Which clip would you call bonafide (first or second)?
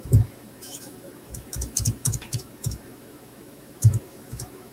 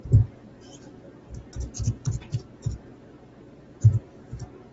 second